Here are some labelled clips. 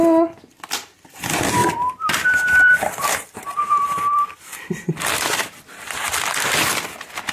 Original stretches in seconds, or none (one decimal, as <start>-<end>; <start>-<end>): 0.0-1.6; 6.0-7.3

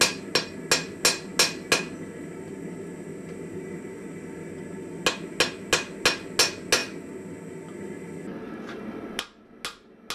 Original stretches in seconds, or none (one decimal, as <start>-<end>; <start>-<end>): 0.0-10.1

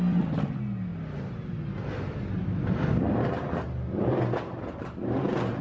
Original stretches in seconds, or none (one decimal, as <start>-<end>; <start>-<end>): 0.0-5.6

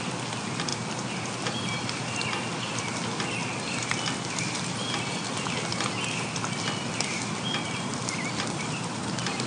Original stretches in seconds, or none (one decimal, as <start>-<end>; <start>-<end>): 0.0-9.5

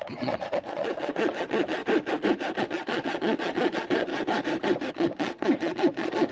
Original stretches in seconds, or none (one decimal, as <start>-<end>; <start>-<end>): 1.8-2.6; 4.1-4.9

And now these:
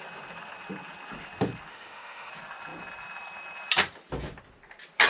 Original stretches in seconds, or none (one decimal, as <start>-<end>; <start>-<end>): 0.0-1.7; 2.3-5.1

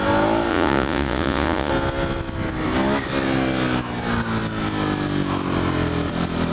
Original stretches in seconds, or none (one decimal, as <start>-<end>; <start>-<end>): 0.0-0.5; 1.7-6.5